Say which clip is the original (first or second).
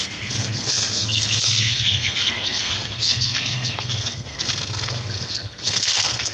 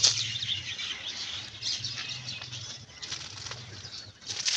second